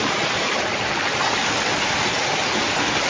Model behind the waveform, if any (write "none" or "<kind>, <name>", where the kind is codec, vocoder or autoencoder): none